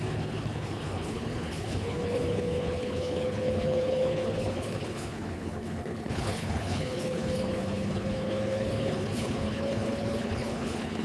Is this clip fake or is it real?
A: fake